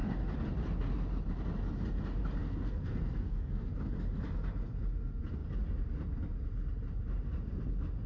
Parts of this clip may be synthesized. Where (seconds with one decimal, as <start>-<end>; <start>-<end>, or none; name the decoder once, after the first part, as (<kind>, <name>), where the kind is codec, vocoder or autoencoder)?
2.4-3.7 (codec, SNAC)

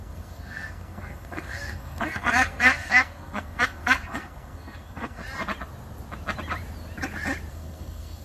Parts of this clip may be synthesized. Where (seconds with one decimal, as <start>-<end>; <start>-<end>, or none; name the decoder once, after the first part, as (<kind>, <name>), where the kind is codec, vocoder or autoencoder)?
0.0-5.2 (codec, SNAC); 7.5-8.2

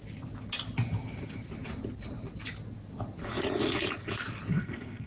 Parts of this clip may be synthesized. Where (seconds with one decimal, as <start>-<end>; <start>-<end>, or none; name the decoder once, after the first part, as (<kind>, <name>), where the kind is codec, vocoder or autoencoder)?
4.5-5.1 (codec, SNAC)

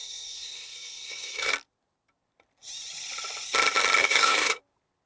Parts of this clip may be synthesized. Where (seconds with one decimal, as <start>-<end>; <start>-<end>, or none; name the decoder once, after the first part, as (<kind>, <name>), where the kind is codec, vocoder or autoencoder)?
0.0-1.5 (codec, SNAC); 4.0-4.6

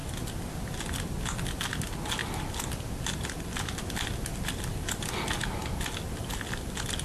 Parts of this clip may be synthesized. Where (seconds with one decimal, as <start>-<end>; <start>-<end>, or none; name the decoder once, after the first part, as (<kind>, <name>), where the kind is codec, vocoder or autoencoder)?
none

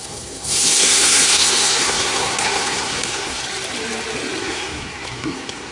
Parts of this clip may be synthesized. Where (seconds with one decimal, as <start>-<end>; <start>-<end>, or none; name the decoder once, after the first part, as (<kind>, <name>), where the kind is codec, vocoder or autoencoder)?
0.0-3.4 (codec, SNAC); 4.4-5.7

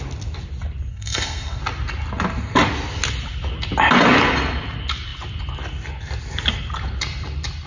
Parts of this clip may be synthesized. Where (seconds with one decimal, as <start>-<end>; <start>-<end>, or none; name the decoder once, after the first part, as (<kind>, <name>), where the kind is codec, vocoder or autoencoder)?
0.9-1.6 (codec, SNAC)

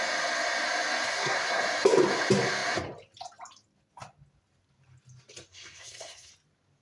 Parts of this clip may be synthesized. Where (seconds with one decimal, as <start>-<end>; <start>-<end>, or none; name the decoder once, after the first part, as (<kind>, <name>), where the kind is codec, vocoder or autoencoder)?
1.1-1.6 (codec, SNAC); 5.5-6.3